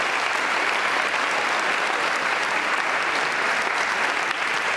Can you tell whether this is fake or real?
real